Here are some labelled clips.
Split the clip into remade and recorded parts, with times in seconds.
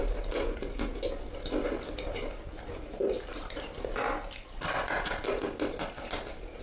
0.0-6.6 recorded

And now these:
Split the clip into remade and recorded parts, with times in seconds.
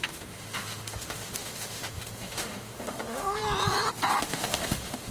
0.0-3.4 remade; 3.4-4.1 recorded; 4.1-5.1 remade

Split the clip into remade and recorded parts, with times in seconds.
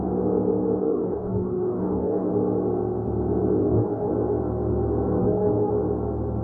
0.0-0.8 recorded; 0.8-2.3 remade; 2.3-3.6 recorded; 3.6-4.1 remade; 4.1-5.2 recorded; 5.2-5.7 remade; 5.7-6.4 recorded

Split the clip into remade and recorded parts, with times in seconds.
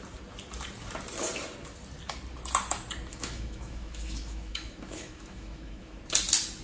0.0-3.1 recorded; 3.1-6.0 remade; 6.0-6.6 recorded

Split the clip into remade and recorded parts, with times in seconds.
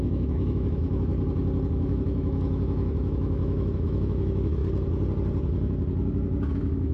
0.0-1.1 remade; 1.1-1.7 recorded; 1.7-4.6 remade; 4.6-6.5 recorded; 6.5-6.9 remade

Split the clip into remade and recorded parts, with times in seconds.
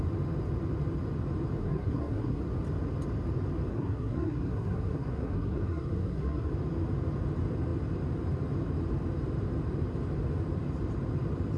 0.0-1.6 recorded; 1.6-2.4 remade; 2.4-3.7 recorded; 3.7-6.5 remade; 6.5-11.6 recorded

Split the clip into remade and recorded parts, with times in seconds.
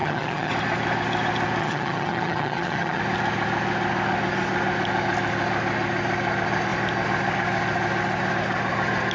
0.0-0.5 remade; 0.5-1.6 recorded; 1.6-3.0 remade; 3.0-9.1 recorded